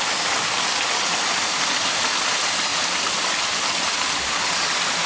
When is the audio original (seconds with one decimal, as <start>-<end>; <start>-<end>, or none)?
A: 0.0-5.1